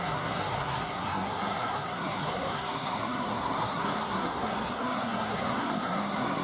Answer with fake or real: fake